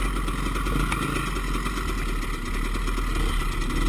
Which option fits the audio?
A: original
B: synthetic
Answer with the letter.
A